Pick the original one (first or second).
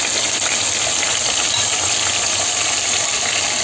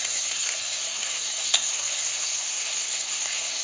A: first